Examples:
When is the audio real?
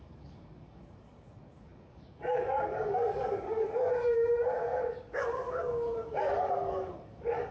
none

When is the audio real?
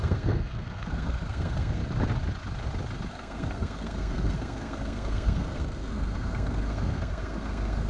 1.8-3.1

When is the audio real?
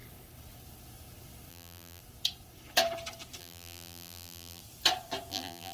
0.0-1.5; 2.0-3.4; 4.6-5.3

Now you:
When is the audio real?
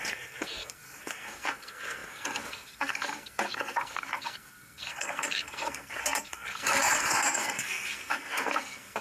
none